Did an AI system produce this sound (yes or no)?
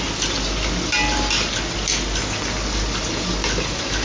no